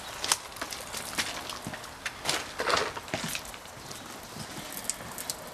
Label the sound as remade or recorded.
recorded